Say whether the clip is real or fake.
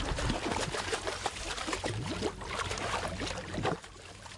real